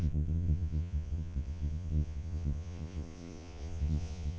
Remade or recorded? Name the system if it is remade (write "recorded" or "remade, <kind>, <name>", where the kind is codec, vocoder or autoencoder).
remade, vocoder, Vocos